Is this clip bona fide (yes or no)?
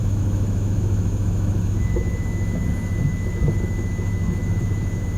no